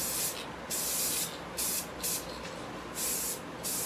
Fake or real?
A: real